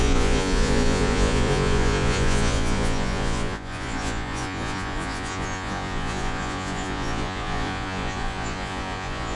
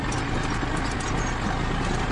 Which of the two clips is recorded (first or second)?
second